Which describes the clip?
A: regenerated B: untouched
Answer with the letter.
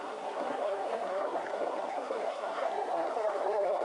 A